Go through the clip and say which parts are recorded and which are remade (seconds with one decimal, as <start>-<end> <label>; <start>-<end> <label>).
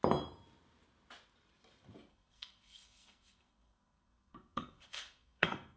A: 0.0-2.1 recorded; 2.1-5.8 remade